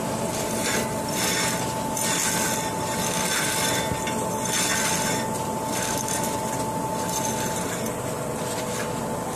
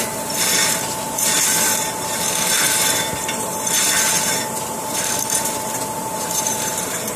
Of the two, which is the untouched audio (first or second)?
first